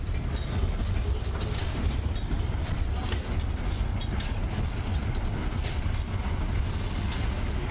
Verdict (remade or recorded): recorded